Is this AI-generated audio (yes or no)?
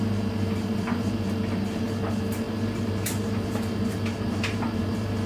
yes